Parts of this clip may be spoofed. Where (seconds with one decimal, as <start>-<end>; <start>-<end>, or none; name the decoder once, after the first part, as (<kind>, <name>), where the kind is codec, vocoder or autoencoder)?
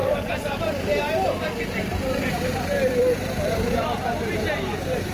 0.0-5.1 (vocoder, BigVGAN v2)